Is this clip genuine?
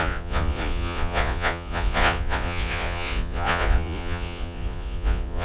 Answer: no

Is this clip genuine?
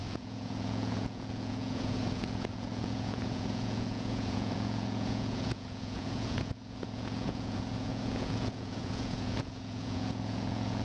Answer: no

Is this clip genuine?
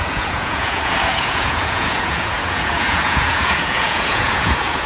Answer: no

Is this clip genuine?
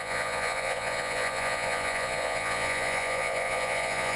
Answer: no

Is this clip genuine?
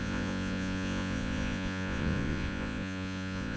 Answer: no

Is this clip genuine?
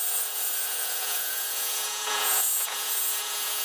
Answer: no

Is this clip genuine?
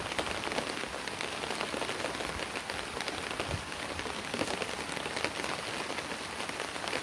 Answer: yes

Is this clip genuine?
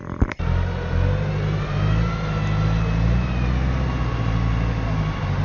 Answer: yes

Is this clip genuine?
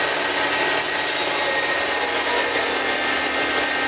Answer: yes